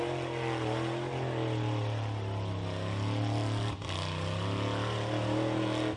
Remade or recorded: recorded